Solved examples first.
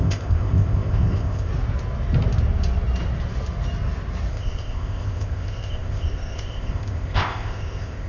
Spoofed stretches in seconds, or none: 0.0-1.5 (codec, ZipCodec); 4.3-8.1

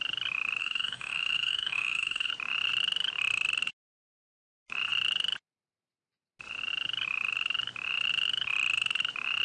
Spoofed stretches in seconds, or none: 0.6-2.3 (autoencoder, DAC-VAE)